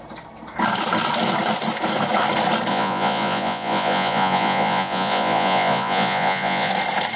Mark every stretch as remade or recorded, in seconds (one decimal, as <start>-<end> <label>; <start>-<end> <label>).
0.0-2.7 recorded; 2.7-6.7 remade; 6.7-7.2 recorded